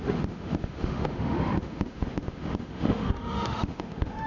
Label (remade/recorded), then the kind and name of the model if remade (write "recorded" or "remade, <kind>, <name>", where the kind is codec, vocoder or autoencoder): remade, autoencoder, DAC-VAE